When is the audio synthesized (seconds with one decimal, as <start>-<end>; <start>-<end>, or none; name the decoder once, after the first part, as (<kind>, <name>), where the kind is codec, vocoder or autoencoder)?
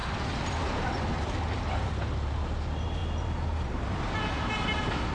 none